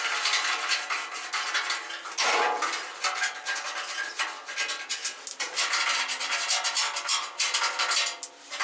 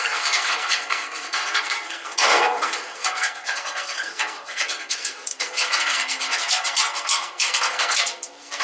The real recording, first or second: first